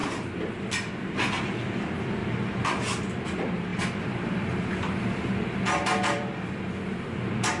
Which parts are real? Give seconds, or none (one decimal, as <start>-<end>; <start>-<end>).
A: none